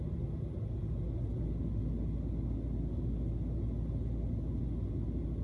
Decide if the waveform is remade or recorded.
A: recorded